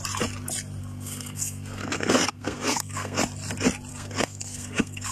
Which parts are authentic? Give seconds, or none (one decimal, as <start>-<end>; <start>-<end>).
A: 0.0-0.8; 3.2-3.9